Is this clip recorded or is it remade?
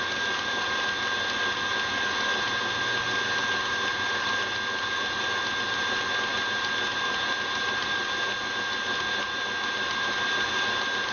recorded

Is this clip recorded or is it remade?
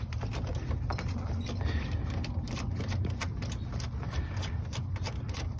recorded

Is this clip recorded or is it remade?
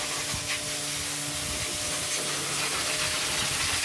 recorded